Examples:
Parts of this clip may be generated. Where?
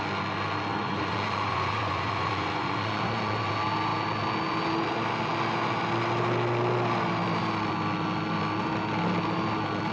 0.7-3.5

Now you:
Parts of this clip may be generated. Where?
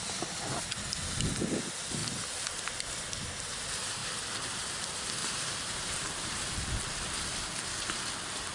4.0-4.6; 5.2-6.9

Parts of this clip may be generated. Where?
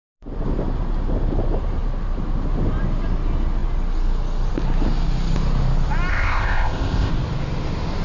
6.1-7.1